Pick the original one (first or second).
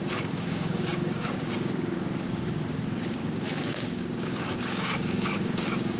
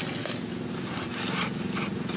second